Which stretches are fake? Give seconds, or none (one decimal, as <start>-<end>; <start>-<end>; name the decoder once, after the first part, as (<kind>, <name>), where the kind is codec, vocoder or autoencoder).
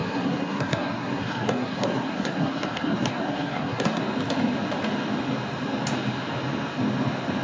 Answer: 0.0-4.0 (codec, SNAC)